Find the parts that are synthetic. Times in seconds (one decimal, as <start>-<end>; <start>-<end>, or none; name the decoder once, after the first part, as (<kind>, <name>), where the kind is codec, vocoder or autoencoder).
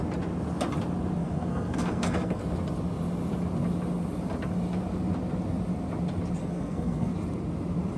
1.2-2.4 (codec, SNAC); 6.4-7.1